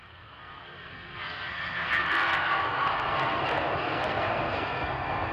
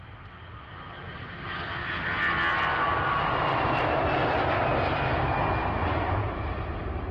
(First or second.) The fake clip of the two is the first